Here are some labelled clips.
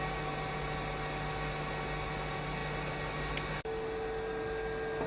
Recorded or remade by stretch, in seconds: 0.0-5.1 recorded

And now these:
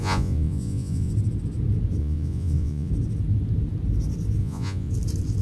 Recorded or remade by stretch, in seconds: 0.0-1.1 remade; 1.1-2.0 recorded; 2.0-2.9 remade; 2.9-4.4 recorded; 4.4-4.9 remade; 4.9-5.4 recorded